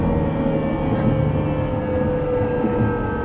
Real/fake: real